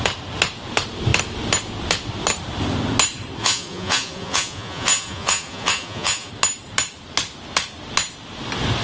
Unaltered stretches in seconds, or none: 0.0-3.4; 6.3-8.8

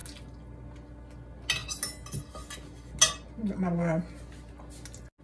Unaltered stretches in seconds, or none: 0.0-5.2

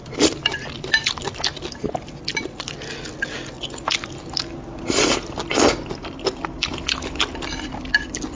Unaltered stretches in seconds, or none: 0.0-8.3